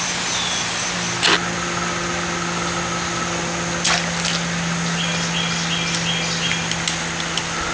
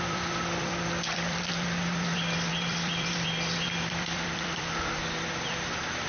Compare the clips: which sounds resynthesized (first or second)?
second